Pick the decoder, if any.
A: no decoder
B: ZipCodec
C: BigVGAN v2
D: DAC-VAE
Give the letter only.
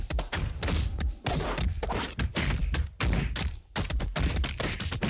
C